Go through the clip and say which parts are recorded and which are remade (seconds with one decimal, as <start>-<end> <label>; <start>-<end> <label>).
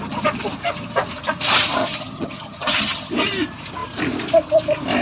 0.0-1.8 recorded; 1.8-3.1 remade; 3.1-5.0 recorded